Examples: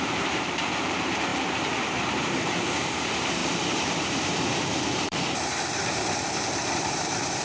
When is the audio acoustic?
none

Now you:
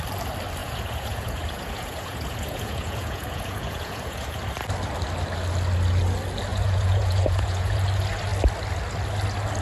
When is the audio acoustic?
0.0-0.6; 4.4-6.5; 7.8-9.6

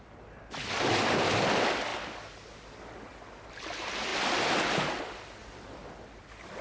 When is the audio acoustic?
0.0-6.6

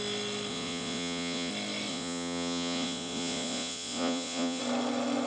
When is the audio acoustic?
0.0-0.5; 1.5-1.9; 4.6-5.3

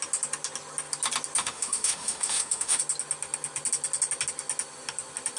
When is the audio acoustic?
0.0-1.4; 2.8-5.4

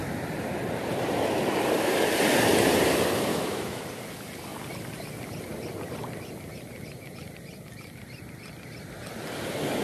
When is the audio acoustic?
0.0-3.3; 3.8-9.8